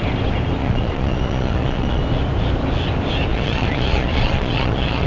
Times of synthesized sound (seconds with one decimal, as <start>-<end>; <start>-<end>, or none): 0.6-2.0; 3.3-5.1